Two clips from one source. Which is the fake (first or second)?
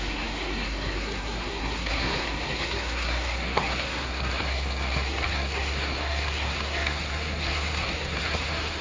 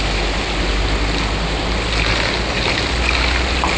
first